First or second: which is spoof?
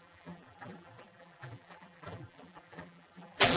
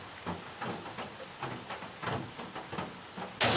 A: first